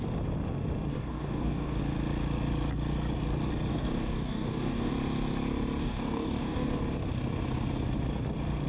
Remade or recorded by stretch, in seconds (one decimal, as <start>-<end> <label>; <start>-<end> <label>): 0.0-0.9 recorded; 0.9-1.8 remade; 1.8-3.7 recorded; 3.7-4.9 remade; 4.9-5.8 recorded; 5.8-6.8 remade; 6.8-8.7 recorded